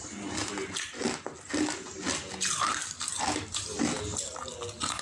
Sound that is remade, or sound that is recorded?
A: remade